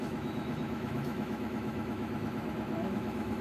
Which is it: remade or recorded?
remade